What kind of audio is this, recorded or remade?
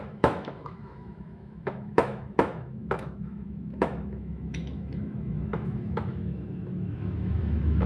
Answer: remade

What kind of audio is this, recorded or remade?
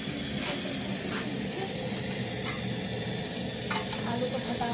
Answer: recorded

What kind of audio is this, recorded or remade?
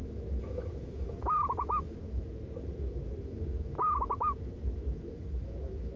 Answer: remade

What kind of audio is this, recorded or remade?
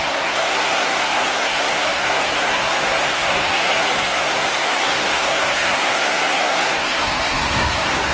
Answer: remade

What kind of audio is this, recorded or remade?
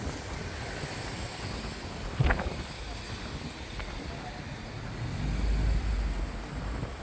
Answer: recorded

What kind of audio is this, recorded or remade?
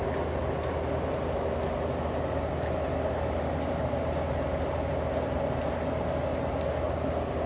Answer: recorded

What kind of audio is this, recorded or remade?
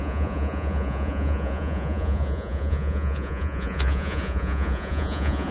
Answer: remade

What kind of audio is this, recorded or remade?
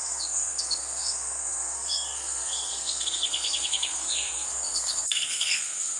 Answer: remade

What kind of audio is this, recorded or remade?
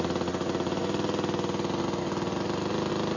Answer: recorded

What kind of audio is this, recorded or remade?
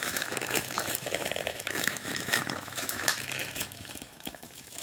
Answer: remade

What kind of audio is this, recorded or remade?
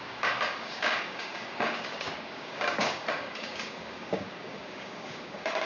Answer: remade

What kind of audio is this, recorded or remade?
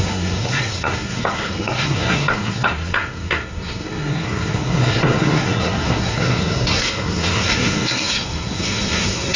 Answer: remade